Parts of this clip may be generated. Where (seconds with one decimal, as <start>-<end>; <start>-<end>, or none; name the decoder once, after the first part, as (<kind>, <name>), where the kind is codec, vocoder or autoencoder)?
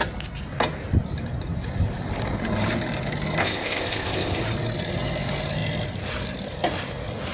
3.4-4.4 (codec, ZipCodec)